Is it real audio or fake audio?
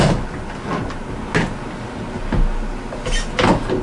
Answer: real